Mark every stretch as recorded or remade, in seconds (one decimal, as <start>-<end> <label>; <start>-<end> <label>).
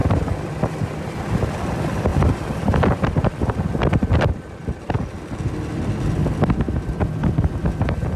0.0-1.4 remade; 1.4-2.1 recorded; 2.1-7.0 remade; 7.0-8.2 recorded